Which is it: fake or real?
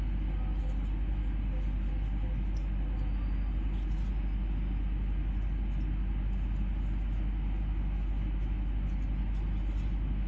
real